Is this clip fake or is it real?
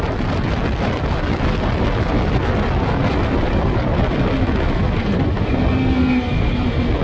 real